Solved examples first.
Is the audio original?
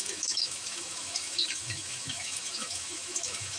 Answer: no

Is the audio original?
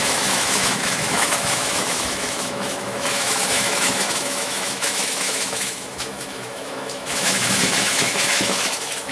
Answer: no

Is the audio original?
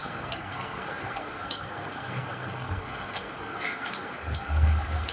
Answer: no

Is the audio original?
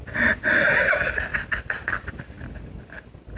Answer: yes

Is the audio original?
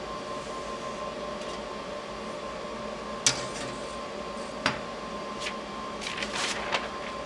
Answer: yes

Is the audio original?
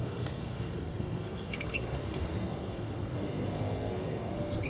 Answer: no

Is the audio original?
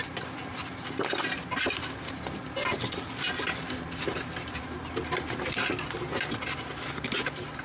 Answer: yes